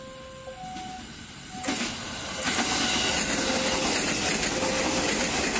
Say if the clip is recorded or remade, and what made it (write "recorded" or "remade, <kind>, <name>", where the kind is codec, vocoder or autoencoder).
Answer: recorded